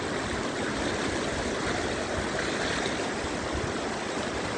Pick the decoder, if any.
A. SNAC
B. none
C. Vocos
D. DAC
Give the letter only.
B